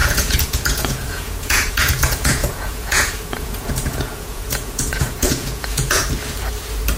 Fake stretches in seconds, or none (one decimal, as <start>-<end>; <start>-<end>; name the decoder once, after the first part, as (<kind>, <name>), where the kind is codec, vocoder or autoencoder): 0.0-6.0 (vocoder, Vocos)